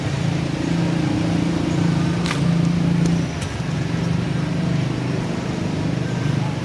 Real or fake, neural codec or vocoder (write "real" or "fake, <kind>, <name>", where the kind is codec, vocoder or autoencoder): fake, vocoder, BigVGAN v2